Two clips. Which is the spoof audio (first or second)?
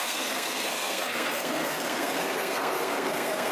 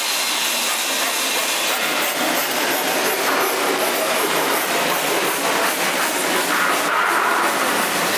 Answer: first